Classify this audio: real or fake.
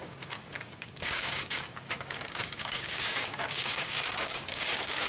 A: fake